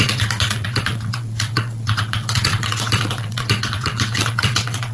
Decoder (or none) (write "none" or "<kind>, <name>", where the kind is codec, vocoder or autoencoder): vocoder, WaveNeXt